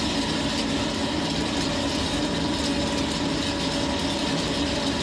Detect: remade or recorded recorded